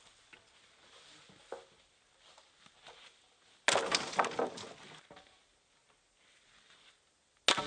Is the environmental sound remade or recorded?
recorded